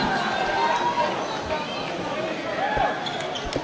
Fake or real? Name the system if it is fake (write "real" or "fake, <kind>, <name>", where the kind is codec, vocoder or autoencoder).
real